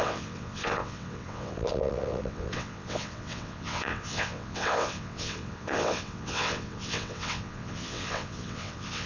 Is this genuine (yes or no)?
no